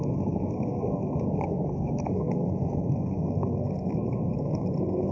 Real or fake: fake